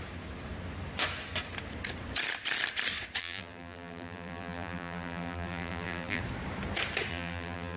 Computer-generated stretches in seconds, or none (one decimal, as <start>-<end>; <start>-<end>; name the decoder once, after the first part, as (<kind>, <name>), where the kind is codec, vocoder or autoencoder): 3.2-6.2 (vocoder, BigVGAN v2); 7.1-7.8